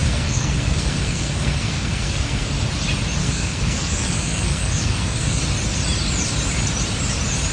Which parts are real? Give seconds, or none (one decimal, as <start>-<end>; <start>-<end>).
2.5-3.2; 5.4-7.5